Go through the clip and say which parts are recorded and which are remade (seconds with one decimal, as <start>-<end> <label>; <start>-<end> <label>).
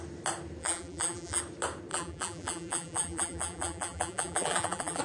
0.0-0.6 recorded; 0.6-1.4 remade; 1.4-1.9 recorded; 1.9-5.0 remade